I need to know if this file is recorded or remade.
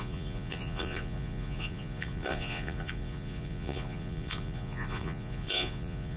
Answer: remade